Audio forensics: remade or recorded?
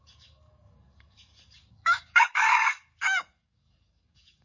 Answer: remade